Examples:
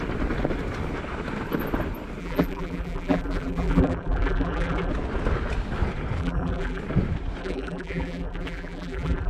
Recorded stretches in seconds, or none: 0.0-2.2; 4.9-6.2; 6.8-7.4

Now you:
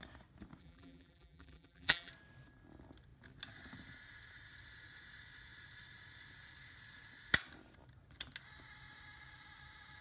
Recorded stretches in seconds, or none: 0.0-0.6; 2.1-10.0

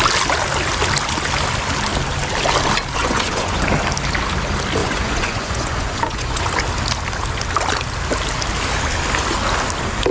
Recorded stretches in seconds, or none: 0.0-3.0; 3.6-4.8; 6.4-10.1

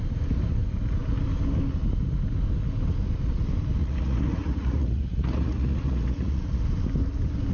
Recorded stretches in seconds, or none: 0.0-3.8; 6.6-7.5

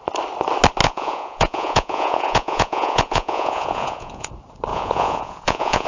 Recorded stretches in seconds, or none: 0.0-0.8; 4.3-4.7

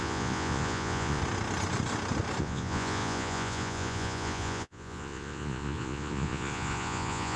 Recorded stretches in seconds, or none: 1.2-2.4

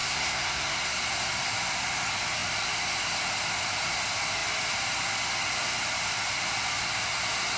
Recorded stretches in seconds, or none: 0.8-7.6